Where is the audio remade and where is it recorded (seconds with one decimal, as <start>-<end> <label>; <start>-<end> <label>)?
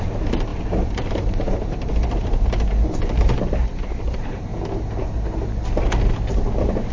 0.0-4.5 remade; 4.5-6.3 recorded; 6.3-6.9 remade